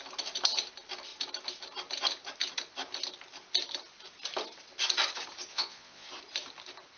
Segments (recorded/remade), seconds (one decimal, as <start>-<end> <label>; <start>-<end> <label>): 0.0-5.5 recorded; 5.5-6.1 remade; 6.1-7.0 recorded